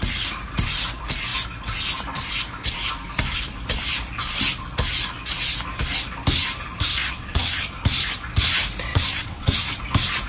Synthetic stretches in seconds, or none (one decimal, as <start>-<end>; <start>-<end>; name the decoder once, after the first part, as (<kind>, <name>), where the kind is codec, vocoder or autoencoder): 7.0-7.7 (vocoder, WaveNeXt); 8.9-9.8